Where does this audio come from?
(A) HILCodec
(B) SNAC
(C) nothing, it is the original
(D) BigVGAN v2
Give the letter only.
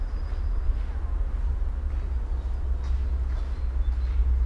C